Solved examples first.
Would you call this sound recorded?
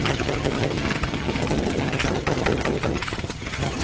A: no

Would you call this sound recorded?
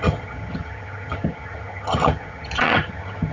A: no